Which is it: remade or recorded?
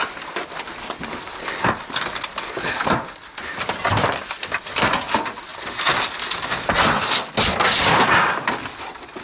recorded